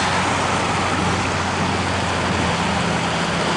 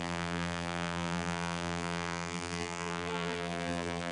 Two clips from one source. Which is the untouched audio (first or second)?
first